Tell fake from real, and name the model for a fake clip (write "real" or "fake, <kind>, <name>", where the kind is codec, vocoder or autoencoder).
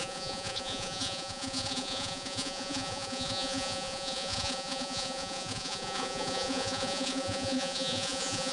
fake, vocoder, Vocos